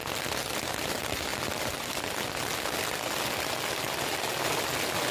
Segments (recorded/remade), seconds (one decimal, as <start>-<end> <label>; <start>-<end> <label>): 0.0-5.1 recorded